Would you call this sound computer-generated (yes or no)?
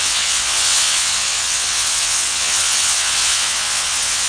yes